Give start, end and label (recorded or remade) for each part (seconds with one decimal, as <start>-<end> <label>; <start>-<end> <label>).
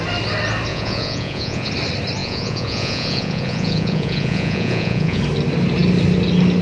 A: 0.0-0.7 recorded; 0.7-1.7 remade; 1.7-2.2 recorded; 2.2-5.2 remade; 5.2-6.6 recorded